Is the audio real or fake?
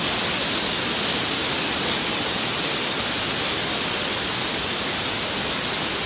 real